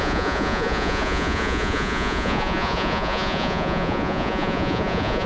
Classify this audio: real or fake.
fake